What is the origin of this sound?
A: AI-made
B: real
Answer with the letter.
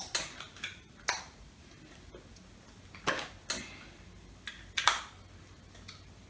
B